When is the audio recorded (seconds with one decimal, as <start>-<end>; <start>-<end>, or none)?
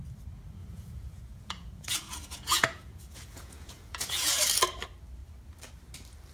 0.0-0.6; 4.4-6.3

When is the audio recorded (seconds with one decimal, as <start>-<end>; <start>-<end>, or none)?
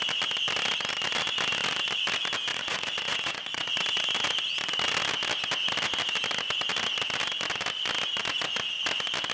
0.0-2.5; 3.7-9.3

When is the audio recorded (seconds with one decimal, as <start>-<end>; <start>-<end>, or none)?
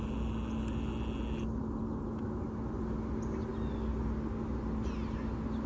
0.0-5.7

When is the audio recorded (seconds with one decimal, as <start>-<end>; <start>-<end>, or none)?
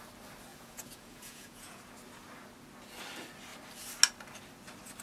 0.0-0.5; 1.8-5.0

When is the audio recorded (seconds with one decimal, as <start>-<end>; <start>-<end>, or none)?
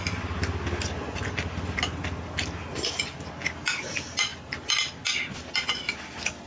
0.0-6.5